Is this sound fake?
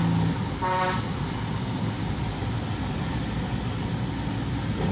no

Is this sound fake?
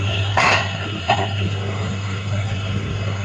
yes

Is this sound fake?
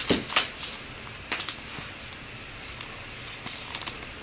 no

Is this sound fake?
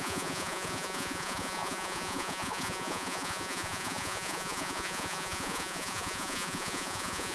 yes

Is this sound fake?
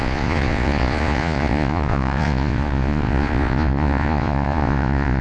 yes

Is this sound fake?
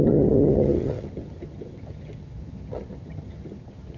yes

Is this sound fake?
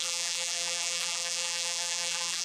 yes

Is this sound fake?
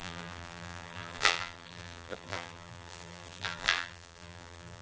yes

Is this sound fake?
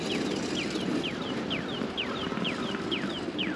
no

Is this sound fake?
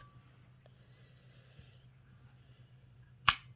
no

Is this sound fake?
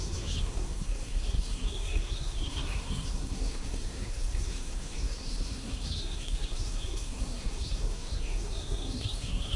yes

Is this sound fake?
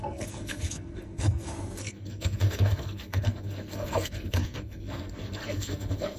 yes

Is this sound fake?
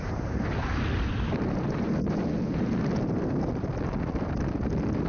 no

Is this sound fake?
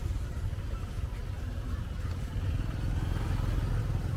no